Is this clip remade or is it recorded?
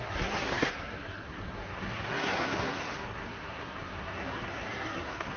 remade